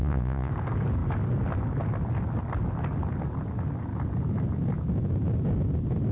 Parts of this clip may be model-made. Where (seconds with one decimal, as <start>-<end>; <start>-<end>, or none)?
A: 0.0-0.5